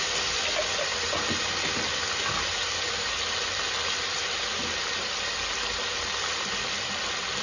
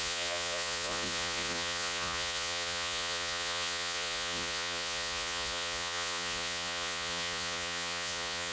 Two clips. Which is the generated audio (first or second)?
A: second